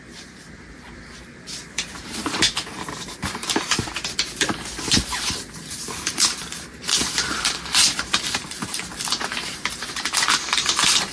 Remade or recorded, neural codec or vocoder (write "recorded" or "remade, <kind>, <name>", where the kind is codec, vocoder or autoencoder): remade, vocoder, BigVGAN v2